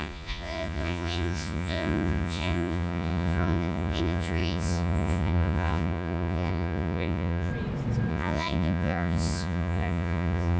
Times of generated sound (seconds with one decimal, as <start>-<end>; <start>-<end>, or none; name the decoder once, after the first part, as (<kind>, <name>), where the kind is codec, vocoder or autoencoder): 0.0-7.5 (vocoder, Vocos); 8.1-10.6